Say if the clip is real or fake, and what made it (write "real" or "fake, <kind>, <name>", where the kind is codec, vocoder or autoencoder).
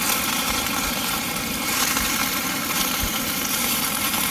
fake, vocoder, BigVGAN v2